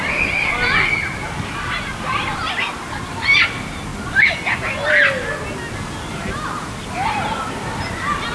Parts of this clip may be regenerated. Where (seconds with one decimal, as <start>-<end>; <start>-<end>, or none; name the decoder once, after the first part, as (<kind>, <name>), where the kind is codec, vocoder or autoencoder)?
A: none